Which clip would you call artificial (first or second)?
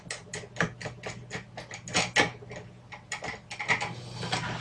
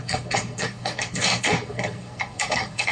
second